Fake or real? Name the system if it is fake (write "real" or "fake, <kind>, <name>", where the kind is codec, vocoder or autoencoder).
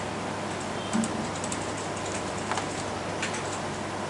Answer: real